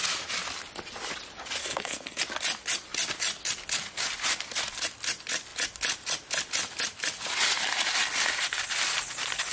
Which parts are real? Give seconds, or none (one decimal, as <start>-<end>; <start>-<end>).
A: 0.0-1.6; 2.2-9.5